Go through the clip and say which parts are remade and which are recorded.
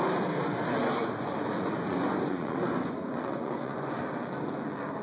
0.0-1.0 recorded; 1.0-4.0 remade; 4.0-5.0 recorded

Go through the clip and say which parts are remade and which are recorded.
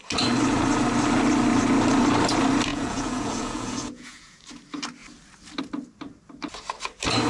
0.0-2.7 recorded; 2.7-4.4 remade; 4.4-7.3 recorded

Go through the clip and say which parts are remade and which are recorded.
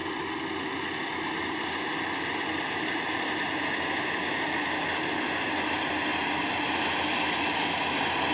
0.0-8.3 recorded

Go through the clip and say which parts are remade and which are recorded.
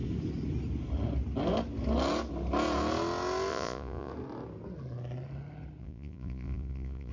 0.0-3.5 recorded; 3.5-4.1 remade; 4.1-5.8 recorded; 5.8-7.1 remade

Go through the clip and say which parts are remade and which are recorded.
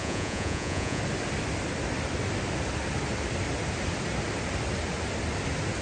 0.0-1.0 remade; 1.0-5.8 recorded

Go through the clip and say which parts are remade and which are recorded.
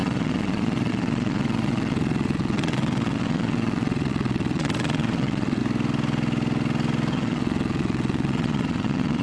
0.0-5.6 remade; 5.6-7.1 recorded; 7.1-9.2 remade